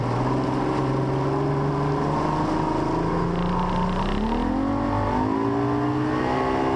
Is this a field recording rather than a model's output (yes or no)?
yes